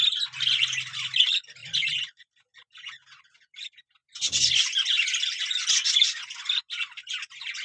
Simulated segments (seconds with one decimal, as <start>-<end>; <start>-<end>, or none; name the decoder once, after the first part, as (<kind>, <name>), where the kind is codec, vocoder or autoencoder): none